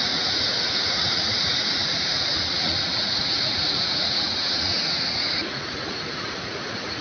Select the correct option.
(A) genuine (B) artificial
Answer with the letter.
B